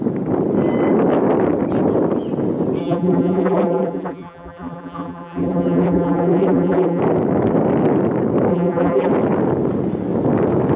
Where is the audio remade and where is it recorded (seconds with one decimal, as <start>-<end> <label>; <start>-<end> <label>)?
0.0-2.8 recorded; 2.8-7.0 remade; 7.0-8.5 recorded; 8.5-9.1 remade; 9.1-10.8 recorded